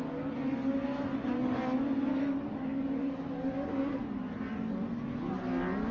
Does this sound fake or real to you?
real